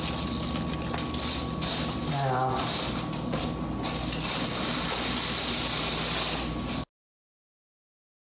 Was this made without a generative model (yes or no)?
yes